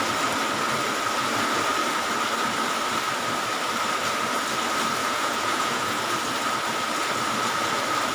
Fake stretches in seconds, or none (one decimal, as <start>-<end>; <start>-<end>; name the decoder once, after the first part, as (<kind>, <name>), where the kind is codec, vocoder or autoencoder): 5.0-6.0 (vocoder, Vocos)